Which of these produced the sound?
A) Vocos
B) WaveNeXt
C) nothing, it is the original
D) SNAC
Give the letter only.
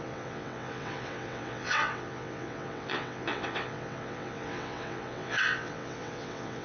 B